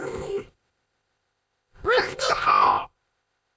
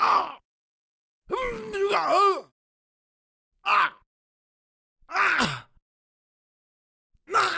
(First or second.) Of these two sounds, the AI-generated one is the first